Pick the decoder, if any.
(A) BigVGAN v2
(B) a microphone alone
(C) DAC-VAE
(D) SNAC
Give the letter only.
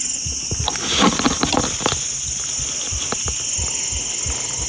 B